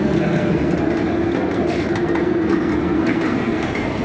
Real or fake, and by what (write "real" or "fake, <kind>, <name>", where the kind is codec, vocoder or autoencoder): fake, codec, SNAC